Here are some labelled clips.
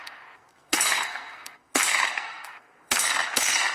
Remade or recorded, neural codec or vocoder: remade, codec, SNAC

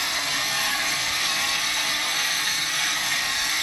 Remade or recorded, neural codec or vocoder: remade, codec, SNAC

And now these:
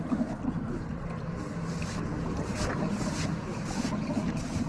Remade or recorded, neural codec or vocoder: recorded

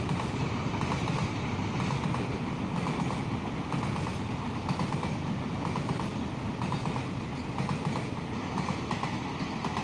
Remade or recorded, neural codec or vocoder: recorded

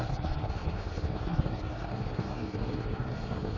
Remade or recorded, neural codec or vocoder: remade, codec, SNAC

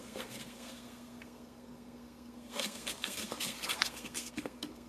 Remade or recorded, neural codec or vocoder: remade, codec, SNAC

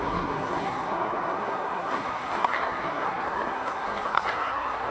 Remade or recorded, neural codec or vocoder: remade, codec, SNAC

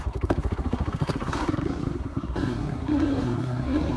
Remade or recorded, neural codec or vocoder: remade, codec, SNAC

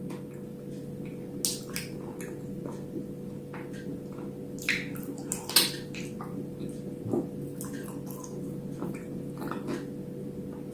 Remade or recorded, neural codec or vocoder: recorded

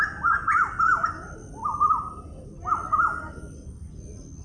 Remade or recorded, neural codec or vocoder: recorded